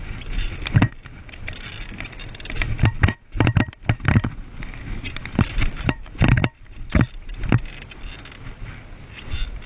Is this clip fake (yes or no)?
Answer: no